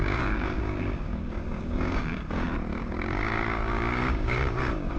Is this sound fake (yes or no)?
yes